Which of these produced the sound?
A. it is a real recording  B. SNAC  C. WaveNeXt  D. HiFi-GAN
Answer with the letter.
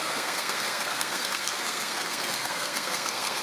B